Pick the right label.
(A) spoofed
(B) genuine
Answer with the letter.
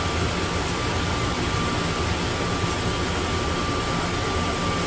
B